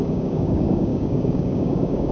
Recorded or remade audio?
remade